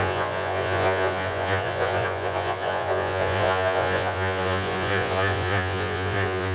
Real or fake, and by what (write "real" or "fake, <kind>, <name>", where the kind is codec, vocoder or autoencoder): fake, vocoder, Vocos